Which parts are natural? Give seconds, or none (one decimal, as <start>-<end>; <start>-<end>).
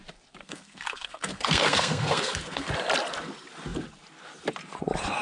0.0-0.4; 2.7-5.2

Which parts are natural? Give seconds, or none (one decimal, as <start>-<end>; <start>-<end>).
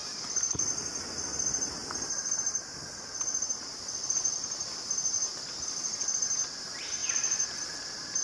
0.0-8.2